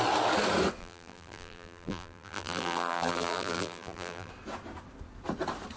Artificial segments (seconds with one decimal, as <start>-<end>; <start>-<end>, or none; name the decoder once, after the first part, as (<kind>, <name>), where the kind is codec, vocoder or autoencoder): 0.8-4.3 (vocoder, BigVGAN v2)